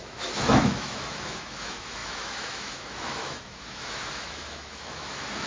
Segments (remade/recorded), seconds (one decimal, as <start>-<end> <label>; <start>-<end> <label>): 0.0-5.5 remade